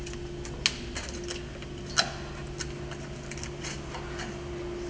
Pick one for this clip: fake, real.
real